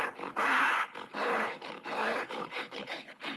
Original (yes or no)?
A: no